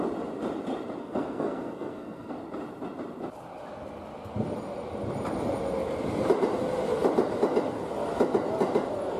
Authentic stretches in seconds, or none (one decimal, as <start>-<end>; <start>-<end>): 0.0-1.0; 2.4-9.2